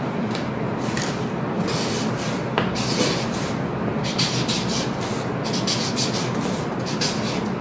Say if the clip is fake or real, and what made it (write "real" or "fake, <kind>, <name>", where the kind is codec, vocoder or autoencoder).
fake, vocoder, BigVGAN v2